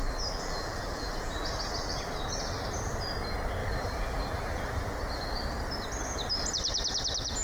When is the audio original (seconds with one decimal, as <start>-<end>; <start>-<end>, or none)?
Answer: 2.6-3.6; 5.0-7.4